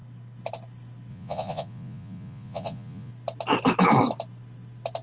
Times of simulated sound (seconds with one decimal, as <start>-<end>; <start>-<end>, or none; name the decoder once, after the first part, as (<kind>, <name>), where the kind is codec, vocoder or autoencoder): 1.1-3.1 (vocoder, Vocos)